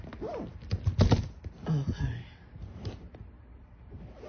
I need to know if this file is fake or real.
real